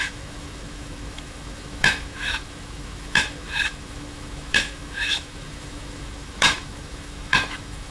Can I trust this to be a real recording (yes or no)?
no